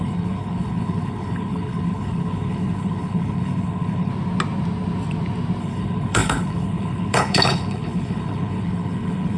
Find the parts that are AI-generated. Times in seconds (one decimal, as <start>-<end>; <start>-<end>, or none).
0.0-4.1; 5.6-9.4